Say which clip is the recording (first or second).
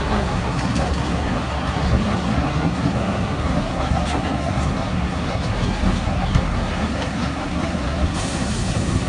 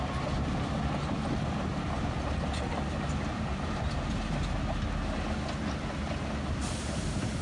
second